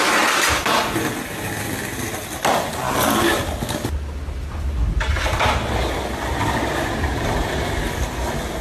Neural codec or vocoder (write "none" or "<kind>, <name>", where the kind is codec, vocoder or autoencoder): none